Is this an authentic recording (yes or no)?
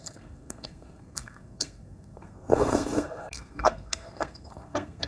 no